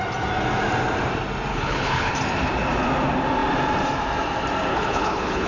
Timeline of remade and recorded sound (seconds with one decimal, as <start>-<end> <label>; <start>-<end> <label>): 0.0-1.5 recorded; 1.5-2.1 remade; 2.1-4.7 recorded; 4.7-5.5 remade